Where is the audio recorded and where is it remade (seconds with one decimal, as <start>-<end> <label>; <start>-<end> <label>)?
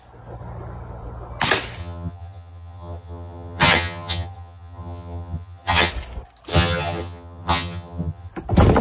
0.0-1.8 recorded; 1.8-5.9 remade; 5.9-6.5 recorded; 6.5-8.3 remade; 8.3-8.8 recorded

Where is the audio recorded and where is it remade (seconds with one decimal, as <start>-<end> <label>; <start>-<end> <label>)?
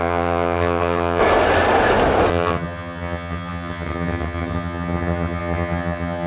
0.0-1.2 remade; 1.2-2.3 recorded; 2.3-6.3 remade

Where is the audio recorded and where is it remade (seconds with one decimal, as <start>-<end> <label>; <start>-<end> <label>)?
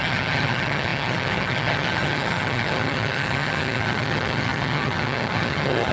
0.0-5.9 remade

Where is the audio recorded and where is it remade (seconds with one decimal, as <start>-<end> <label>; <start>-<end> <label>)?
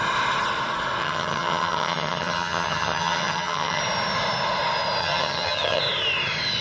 0.0-1.0 recorded; 1.0-3.8 remade; 3.8-5.0 recorded; 5.0-5.8 remade; 5.8-6.6 recorded